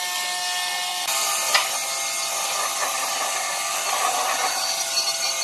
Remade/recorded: recorded